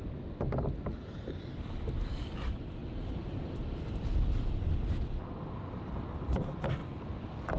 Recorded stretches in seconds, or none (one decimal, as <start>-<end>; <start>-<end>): 0.0-2.8; 3.9-7.6